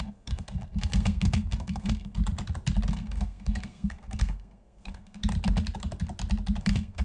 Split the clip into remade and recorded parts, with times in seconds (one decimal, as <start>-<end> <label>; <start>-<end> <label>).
0.0-2.2 remade; 2.2-2.9 recorded; 2.9-5.2 remade; 5.2-6.6 recorded; 6.6-7.0 remade